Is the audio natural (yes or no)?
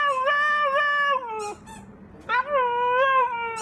yes